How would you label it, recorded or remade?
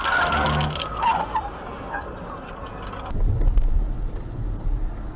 recorded